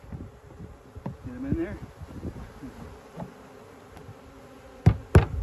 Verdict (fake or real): real